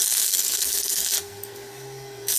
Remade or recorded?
remade